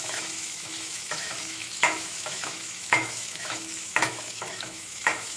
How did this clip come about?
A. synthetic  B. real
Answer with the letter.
A